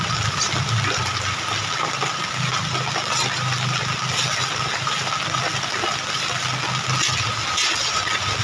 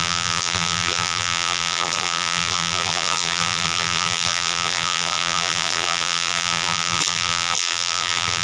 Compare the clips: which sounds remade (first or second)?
second